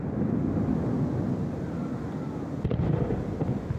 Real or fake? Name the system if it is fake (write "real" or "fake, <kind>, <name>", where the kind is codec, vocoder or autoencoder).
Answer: real